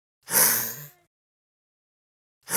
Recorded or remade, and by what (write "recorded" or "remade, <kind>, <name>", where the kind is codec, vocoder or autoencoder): recorded